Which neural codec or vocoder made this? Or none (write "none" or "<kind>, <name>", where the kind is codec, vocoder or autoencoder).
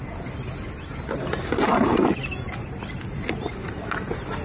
none